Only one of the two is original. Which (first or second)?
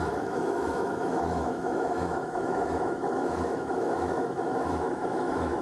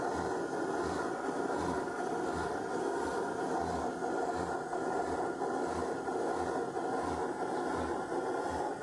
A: second